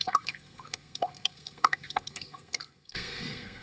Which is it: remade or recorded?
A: remade